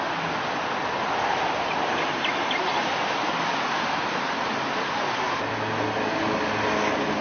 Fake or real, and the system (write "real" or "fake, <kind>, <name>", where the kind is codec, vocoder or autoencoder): real